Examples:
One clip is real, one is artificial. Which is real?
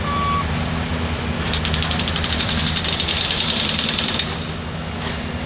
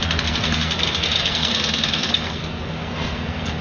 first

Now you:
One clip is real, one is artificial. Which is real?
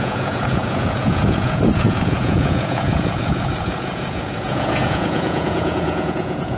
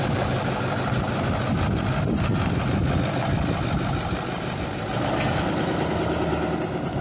second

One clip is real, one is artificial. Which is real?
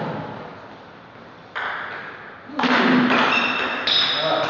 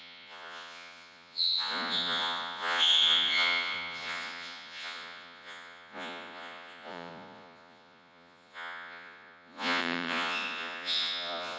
first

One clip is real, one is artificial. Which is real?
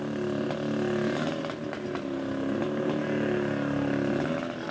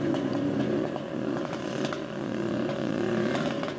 first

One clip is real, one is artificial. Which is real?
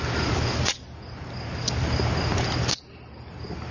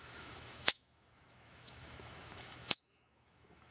first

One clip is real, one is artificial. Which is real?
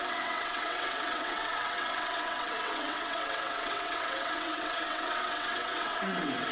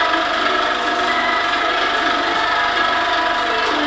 second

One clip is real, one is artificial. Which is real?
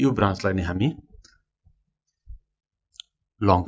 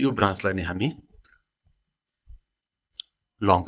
first